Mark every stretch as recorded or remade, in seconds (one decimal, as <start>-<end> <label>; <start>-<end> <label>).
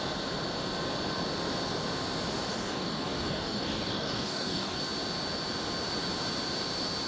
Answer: 0.0-2.5 recorded; 2.5-4.8 remade; 4.8-7.1 recorded